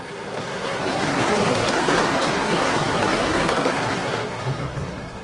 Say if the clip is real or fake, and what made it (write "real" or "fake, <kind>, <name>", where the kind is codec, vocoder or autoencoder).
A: fake, codec, SNAC